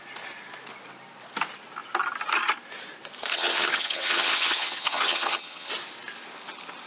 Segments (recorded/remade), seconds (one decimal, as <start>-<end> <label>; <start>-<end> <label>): 0.0-3.3 recorded; 3.3-5.7 remade; 5.7-6.9 recorded